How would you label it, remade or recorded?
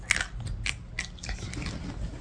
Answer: recorded